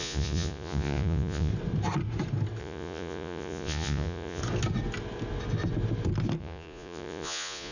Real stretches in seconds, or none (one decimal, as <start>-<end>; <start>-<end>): 1.5-2.6; 4.4-6.4